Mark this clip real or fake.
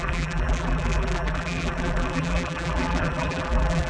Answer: fake